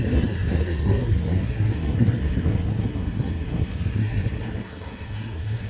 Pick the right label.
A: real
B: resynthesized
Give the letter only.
B